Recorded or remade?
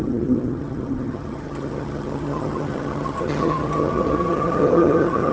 remade